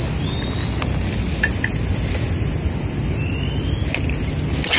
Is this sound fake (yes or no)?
no